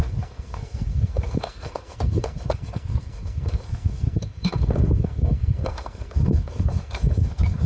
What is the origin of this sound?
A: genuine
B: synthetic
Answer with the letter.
B